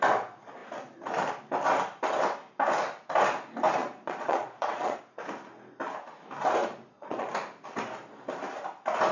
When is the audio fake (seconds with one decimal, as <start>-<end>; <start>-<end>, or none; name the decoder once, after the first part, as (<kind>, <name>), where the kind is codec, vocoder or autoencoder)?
3.8-5.0 (vocoder, Vocos); 6.6-7.3